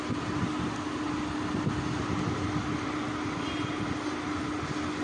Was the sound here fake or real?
real